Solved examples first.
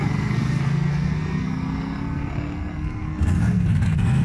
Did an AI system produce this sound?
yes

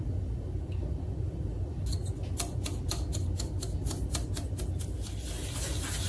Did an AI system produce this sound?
no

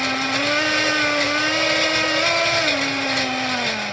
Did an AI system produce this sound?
no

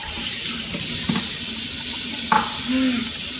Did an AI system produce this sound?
no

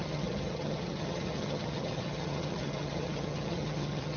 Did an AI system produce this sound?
yes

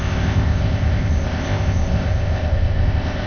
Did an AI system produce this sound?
yes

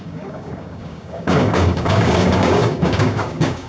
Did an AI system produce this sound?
yes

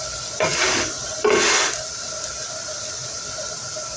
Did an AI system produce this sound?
yes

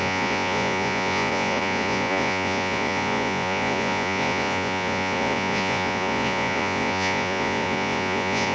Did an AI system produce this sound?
yes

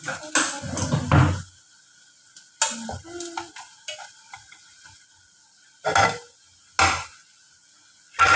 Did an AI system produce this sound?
no